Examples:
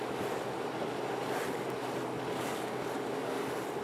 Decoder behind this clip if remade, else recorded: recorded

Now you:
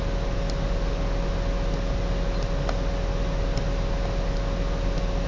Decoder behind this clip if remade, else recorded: recorded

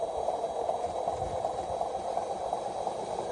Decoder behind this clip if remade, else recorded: remade, vocoder, BigVGAN v2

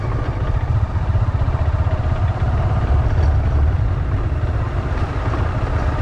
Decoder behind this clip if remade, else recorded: remade, vocoder, BigVGAN v2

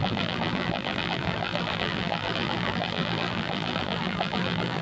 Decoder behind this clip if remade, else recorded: remade, vocoder, BigVGAN v2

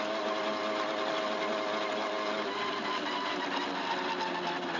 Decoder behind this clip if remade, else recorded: recorded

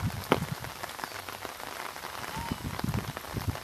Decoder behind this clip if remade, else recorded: recorded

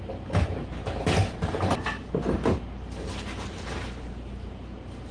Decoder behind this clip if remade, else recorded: recorded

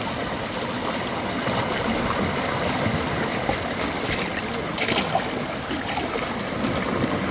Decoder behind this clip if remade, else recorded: recorded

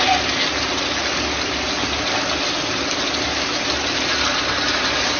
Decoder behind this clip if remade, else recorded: recorded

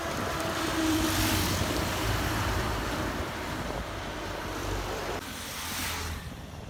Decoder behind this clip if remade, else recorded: remade, vocoder, BigVGAN v2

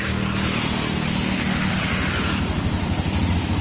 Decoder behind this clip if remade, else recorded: recorded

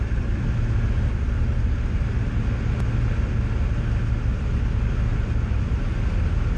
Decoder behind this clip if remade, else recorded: recorded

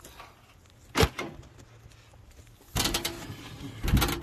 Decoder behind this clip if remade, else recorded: recorded